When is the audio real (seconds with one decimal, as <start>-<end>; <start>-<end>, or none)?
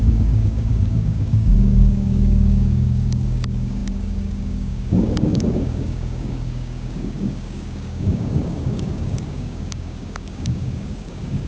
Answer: none